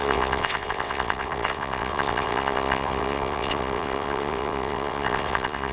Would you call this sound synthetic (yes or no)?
yes